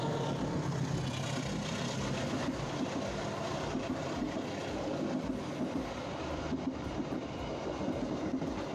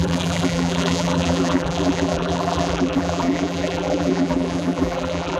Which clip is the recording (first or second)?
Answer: first